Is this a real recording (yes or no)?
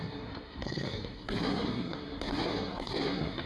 no